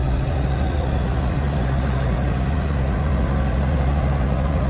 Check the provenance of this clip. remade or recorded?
remade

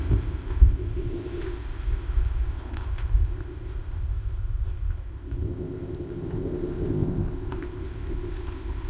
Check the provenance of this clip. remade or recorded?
remade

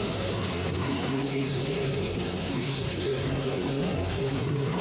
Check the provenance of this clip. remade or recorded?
remade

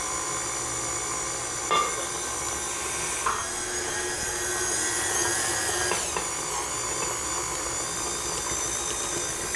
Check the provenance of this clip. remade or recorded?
recorded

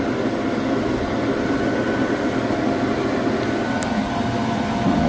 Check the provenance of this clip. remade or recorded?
recorded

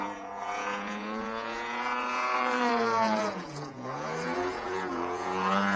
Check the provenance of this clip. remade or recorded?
remade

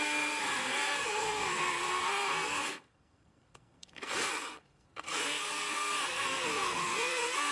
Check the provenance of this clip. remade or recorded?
remade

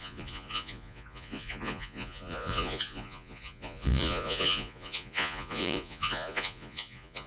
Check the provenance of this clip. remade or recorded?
remade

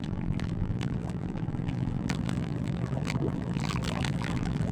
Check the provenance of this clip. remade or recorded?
remade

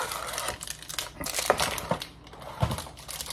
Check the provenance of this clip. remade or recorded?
recorded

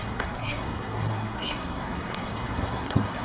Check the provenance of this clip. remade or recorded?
remade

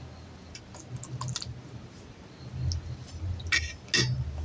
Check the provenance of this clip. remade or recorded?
recorded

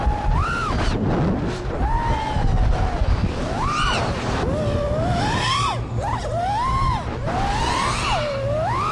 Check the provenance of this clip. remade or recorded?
recorded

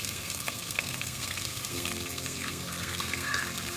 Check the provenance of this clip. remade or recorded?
remade